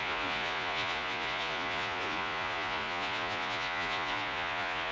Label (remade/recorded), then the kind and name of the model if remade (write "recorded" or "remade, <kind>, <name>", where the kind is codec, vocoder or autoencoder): remade, vocoder, Vocos